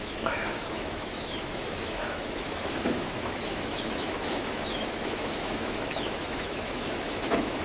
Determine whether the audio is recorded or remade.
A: remade